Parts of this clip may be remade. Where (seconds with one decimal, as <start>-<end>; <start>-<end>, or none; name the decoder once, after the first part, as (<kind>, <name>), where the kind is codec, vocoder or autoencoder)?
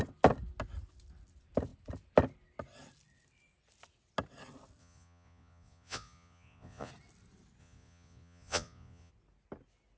4.8-6.9 (vocoder, Vocos); 7.6-9.1